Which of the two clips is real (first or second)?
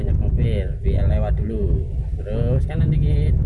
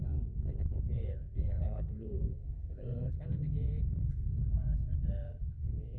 first